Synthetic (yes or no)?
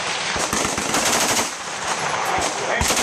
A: yes